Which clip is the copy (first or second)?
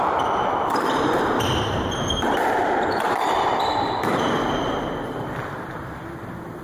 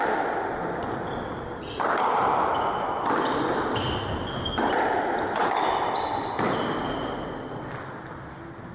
first